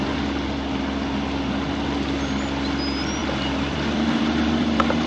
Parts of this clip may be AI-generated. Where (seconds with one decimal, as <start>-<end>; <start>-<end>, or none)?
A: 3.2-5.1